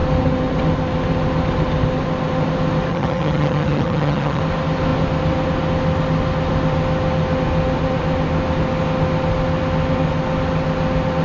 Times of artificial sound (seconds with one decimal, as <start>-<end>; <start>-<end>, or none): 2.9-4.4